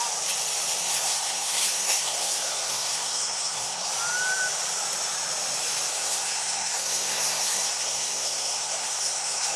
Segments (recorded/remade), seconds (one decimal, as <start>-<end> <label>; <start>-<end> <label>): 0.0-0.8 recorded; 0.8-3.9 remade; 3.9-5.9 recorded; 5.9-9.6 remade